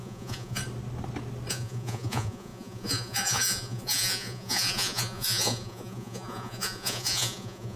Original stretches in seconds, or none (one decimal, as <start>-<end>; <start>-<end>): 0.6-1.5